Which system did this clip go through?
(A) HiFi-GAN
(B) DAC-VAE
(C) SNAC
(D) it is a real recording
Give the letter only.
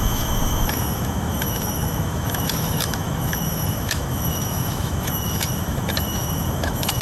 B